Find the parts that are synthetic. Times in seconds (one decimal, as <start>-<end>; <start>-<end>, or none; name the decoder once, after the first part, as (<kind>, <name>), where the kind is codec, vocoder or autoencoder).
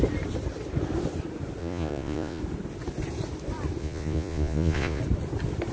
1.6-2.4 (vocoder, Vocos); 3.8-5.0